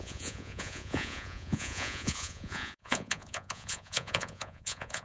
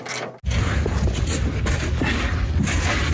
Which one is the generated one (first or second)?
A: first